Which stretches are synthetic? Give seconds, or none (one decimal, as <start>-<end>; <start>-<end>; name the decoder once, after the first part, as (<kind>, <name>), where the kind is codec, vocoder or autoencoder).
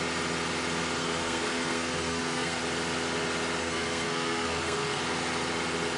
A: 1.0-2.6 (codec, SNAC); 3.6-5.0